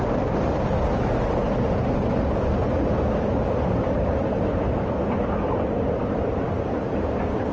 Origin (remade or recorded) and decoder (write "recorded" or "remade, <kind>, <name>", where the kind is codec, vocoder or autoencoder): recorded